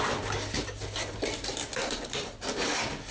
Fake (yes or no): no